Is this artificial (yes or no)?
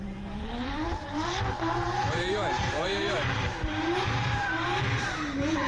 yes